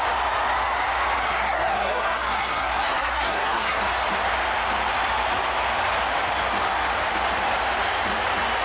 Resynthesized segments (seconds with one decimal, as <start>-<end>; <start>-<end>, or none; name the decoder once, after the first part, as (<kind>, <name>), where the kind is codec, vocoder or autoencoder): 1.2-3.8 (codec, SNAC)

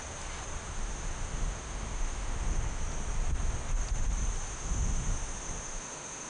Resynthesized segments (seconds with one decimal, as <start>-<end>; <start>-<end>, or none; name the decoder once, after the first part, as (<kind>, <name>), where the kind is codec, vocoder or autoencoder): 0.6-2.8 (autoencoder, DAC-VAE); 4.5-6.3

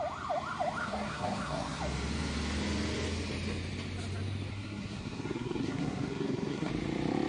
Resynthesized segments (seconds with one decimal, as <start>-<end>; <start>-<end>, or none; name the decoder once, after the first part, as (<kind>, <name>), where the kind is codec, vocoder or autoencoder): 0.8-1.8 (codec, SNAC); 4.5-6.7

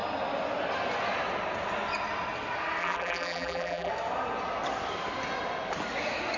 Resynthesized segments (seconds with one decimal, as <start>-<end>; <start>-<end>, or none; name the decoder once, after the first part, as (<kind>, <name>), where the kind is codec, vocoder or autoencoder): 2.8-3.9 (vocoder, BigVGAN v2)

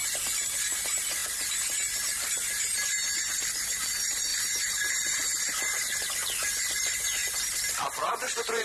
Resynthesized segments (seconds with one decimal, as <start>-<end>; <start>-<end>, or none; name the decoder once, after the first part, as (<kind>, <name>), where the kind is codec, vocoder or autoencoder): 0.0-1.2 (vocoder, BigVGAN v2); 3.4-8.6

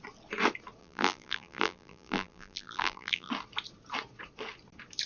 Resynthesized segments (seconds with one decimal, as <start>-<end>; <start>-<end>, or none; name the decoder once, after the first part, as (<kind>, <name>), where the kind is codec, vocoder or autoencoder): 0.8-3.3 (vocoder, BigVGAN v2)